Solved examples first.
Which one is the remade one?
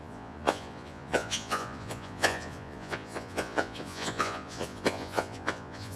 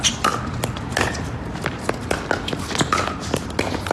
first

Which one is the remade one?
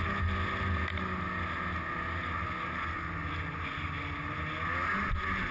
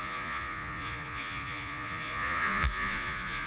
second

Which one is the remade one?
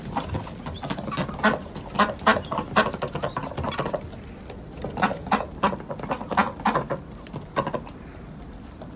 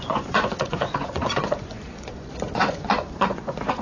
second